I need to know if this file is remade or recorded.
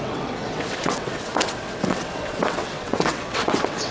remade